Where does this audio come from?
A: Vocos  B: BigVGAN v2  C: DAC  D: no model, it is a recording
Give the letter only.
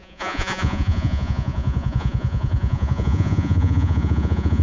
A